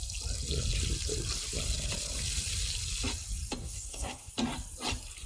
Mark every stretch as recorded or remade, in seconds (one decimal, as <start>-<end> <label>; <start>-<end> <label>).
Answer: 0.0-3.6 recorded; 3.6-4.3 remade; 4.3-5.3 recorded